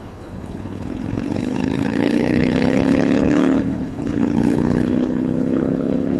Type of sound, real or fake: fake